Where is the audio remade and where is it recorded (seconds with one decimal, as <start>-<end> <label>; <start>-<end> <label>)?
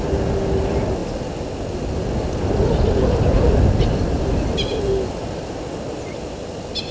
0.0-6.9 recorded